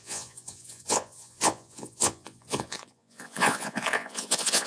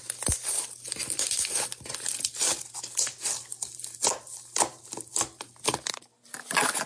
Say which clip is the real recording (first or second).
second